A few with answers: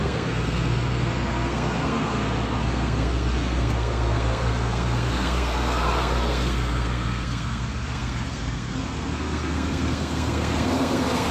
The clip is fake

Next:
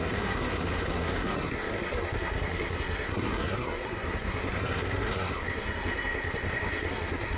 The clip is fake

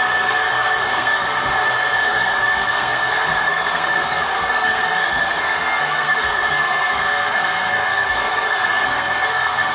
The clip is fake